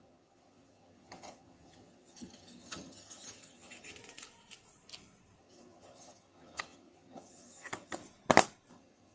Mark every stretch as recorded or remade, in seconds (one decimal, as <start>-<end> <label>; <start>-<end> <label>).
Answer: 0.0-4.0 remade; 4.0-5.4 recorded; 5.4-8.0 remade; 8.0-8.7 recorded; 8.7-9.1 remade